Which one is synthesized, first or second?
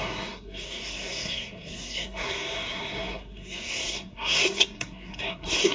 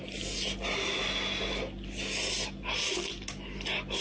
first